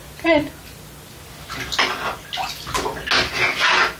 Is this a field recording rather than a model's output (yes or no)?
yes